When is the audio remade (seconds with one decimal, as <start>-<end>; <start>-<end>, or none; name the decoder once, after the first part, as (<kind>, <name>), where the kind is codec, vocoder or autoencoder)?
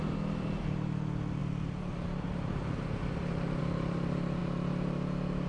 1.4-3.6 (vocoder, BigVGAN v2)